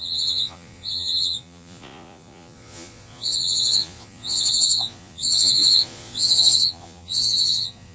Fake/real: fake